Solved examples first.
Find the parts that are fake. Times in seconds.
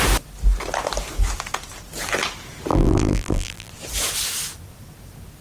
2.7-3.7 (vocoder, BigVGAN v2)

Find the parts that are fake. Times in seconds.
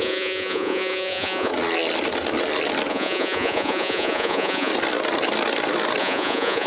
0.0-1.5 (vocoder, Vocos); 2.9-4.7; 6.0-6.7